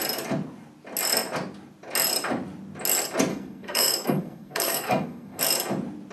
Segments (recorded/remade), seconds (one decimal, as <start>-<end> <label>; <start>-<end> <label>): 0.0-3.3 recorded; 3.3-5.4 remade; 5.4-6.1 recorded